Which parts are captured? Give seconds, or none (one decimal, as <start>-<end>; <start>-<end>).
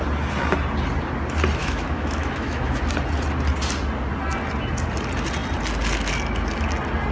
0.0-1.6; 2.8-7.1